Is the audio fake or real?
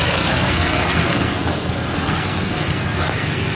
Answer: fake